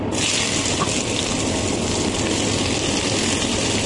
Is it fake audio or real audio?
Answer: real